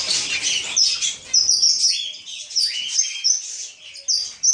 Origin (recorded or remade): recorded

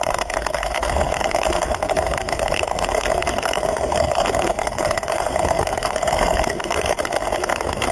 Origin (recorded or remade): remade